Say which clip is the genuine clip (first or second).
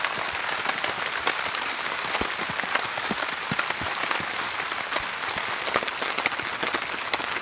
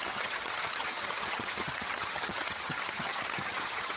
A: first